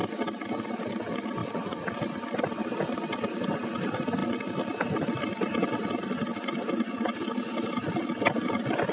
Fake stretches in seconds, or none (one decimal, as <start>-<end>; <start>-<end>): 1.4-1.9